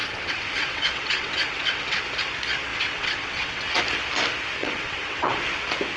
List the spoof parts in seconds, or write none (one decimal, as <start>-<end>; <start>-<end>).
0.0-2.0; 2.7-3.8; 4.6-5.4